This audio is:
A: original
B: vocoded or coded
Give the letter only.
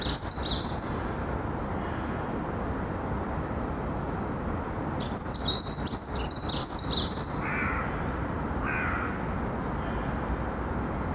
A